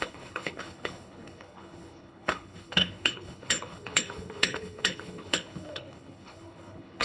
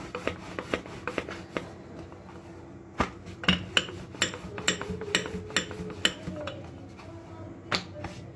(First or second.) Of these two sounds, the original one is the second